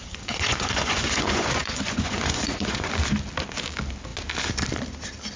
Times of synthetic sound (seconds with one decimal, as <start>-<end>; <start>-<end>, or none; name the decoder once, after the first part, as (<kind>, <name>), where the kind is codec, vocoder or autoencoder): 0.0-2.9 (vocoder, Vocos)